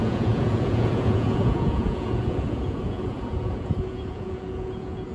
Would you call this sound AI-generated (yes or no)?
yes